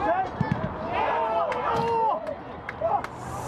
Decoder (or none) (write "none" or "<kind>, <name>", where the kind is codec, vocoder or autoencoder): none